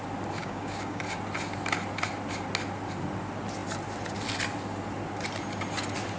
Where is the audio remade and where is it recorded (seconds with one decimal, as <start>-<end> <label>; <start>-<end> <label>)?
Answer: 0.0-0.4 recorded; 0.4-1.0 remade; 1.0-6.2 recorded